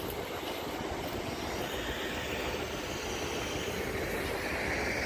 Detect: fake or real real